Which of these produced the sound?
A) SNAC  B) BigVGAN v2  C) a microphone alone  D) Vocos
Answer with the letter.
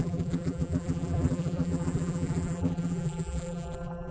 B